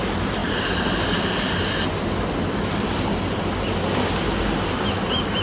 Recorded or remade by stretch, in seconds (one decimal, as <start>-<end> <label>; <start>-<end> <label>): 0.0-0.4 recorded; 0.4-1.2 remade; 1.2-5.4 recorded